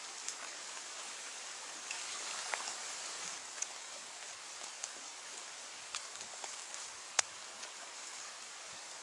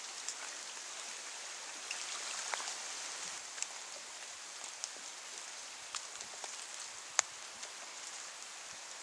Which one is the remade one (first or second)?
first